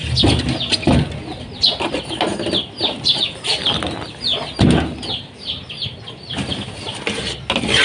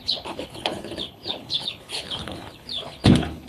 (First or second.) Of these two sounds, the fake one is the second